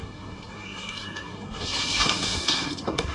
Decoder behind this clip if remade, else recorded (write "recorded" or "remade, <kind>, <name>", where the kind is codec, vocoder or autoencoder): remade, codec, SNAC